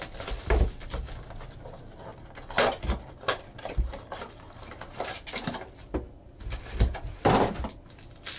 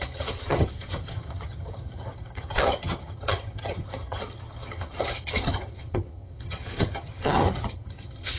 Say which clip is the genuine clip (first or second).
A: first